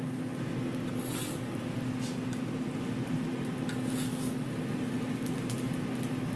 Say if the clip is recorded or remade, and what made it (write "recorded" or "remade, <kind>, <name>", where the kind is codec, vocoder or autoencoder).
recorded